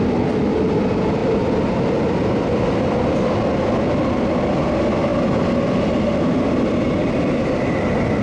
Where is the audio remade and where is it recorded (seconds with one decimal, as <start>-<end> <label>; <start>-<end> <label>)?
0.0-8.2 recorded